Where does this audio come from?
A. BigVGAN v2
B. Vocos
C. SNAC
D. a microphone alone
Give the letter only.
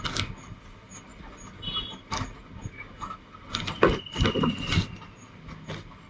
D